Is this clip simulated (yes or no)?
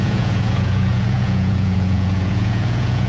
yes